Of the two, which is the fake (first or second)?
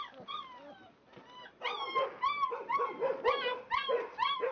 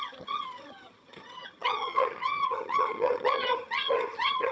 second